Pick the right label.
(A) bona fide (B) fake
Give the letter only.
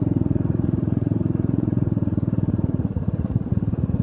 B